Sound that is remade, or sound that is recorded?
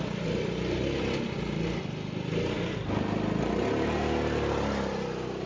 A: recorded